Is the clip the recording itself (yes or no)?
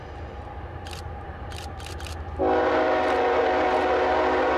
yes